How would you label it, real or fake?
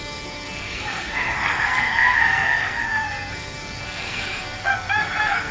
fake